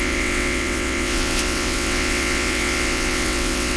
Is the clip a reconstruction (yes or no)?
yes